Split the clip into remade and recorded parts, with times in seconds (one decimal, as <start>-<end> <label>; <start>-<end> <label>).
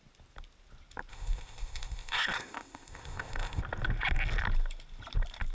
0.0-1.1 recorded; 1.1-3.6 remade; 3.6-5.5 recorded